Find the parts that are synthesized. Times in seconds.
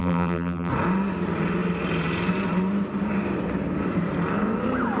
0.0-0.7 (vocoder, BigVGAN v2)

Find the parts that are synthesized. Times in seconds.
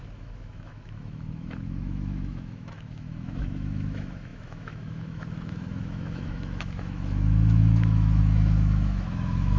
0.0-9.6 (autoencoder, DAC-VAE)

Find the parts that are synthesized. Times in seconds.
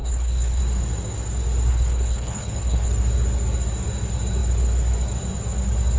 0.0-0.6 (codec, HILCodec); 1.7-2.9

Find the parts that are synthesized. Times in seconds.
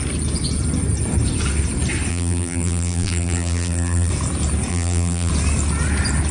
2.1-4.1 (vocoder, BigVGAN v2); 4.7-5.3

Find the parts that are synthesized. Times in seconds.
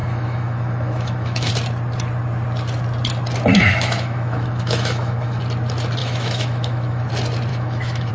0.0-1.5 (autoencoder, DAC-VAE); 3.5-5.4; 6.0-7.1; 7.5-8.1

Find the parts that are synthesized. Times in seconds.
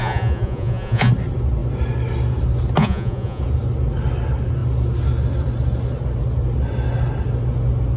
0.0-1.1 (vocoder, Vocos); 2.8-3.4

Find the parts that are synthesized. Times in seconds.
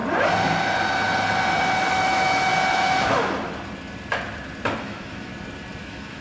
1.9-2.5 (autoencoder, DAC-VAE); 4.8-5.3; 5.8-6.2